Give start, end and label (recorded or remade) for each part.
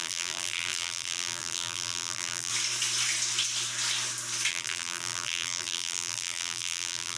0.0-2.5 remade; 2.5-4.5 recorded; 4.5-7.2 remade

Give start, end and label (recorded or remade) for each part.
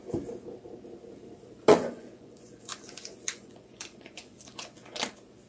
0.0-1.7 recorded; 1.7-5.0 remade; 5.0-5.5 recorded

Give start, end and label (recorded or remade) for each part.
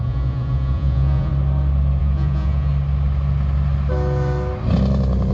0.0-1.3 remade; 1.3-2.0 recorded; 2.0-2.7 remade; 2.7-5.3 recorded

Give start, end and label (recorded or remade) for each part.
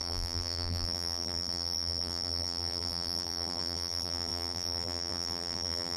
0.0-6.0 remade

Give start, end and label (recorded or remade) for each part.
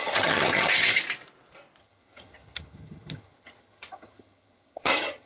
0.0-1.0 remade; 1.0-1.8 recorded; 1.8-5.3 remade